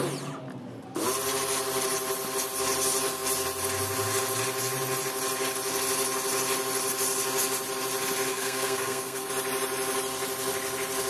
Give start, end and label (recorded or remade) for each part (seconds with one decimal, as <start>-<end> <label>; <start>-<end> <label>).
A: 0.0-8.3 recorded; 8.3-9.3 remade; 9.3-11.1 recorded